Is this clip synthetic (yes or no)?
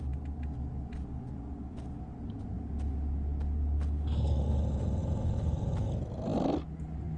no